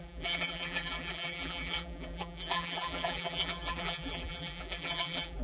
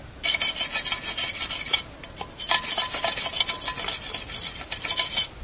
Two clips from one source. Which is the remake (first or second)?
first